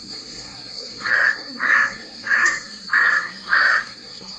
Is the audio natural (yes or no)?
no